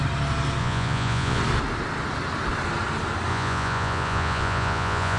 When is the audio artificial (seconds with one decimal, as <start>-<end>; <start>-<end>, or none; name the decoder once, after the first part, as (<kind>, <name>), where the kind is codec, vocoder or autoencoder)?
0.6-1.4 (vocoder, Vocos); 3.3-5.2